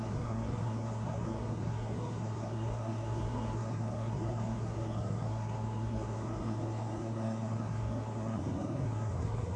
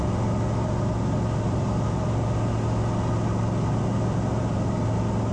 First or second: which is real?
second